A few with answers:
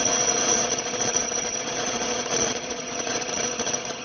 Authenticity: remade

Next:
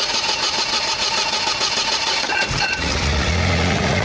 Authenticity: remade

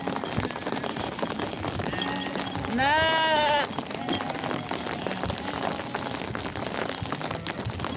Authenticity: recorded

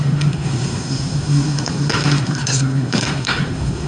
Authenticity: remade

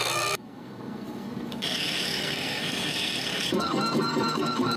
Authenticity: remade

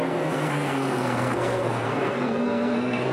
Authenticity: remade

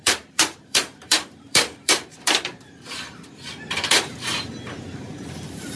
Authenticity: remade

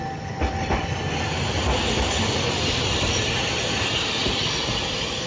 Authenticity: recorded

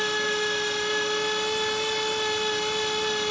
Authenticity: recorded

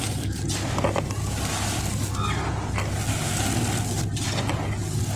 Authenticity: recorded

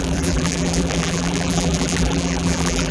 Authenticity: remade